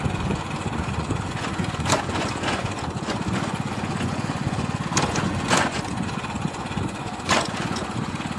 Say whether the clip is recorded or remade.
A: remade